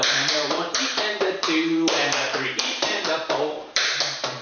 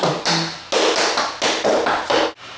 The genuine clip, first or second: second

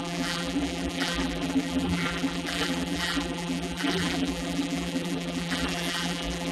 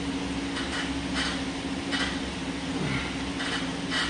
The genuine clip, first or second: second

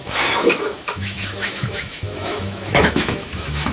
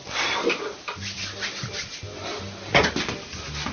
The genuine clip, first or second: second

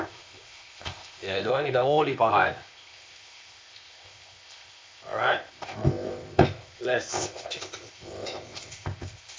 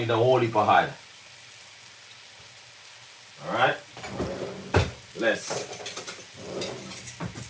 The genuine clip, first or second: second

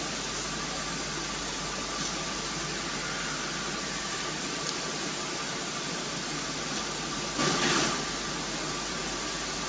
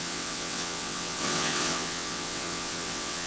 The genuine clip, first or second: first